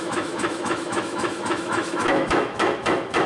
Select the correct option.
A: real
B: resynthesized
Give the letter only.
B